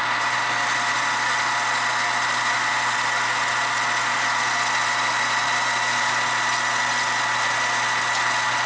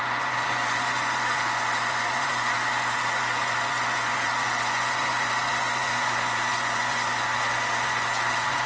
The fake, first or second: second